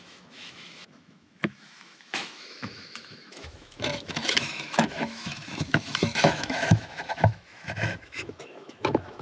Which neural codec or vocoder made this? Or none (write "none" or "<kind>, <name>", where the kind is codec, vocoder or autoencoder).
autoencoder, DAC-VAE